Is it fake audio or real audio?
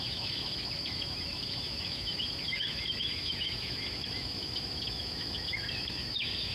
fake